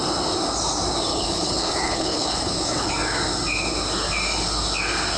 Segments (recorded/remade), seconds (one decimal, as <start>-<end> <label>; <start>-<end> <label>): 0.0-1.1 recorded; 1.1-2.9 remade; 2.9-5.2 recorded